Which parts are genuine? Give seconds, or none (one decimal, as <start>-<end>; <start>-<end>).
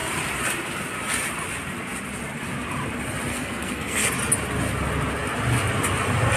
0.0-3.3; 4.1-6.4